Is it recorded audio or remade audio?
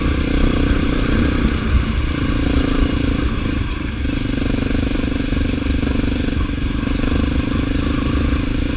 remade